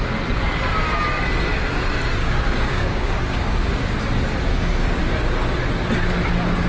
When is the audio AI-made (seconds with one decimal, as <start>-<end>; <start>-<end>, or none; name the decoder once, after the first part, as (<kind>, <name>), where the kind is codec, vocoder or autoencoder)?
2.2-3.9 (codec, DAC); 4.5-5.0